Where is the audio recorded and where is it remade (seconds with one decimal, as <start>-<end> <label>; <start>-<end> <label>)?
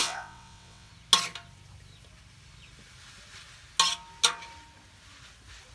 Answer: 0.0-0.9 remade; 0.9-5.7 recorded